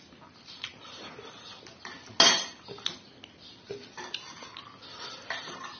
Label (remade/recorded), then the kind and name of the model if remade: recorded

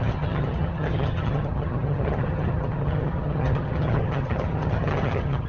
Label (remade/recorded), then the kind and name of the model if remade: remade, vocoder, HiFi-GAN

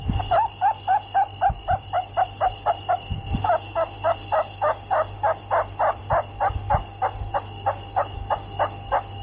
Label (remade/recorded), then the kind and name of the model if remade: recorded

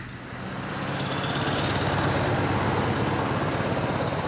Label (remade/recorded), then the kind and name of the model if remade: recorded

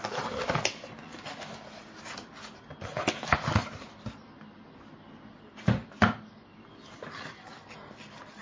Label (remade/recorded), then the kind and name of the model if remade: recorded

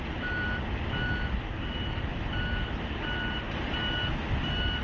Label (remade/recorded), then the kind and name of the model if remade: recorded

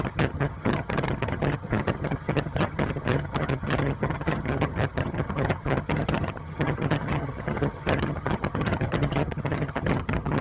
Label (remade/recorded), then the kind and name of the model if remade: remade, vocoder, HiFi-GAN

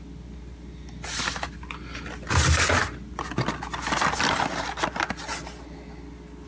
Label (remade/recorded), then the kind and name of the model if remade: recorded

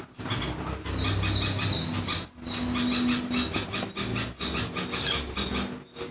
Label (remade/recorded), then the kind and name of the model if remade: recorded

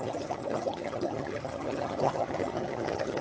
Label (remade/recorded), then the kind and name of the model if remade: remade, vocoder, HiFi-GAN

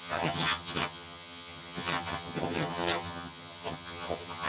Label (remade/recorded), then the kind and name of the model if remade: remade, vocoder, HiFi-GAN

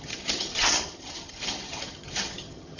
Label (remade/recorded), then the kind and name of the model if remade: remade, vocoder, HiFi-GAN